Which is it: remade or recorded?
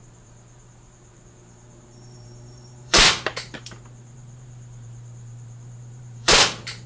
remade